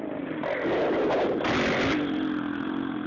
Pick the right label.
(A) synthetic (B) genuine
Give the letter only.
B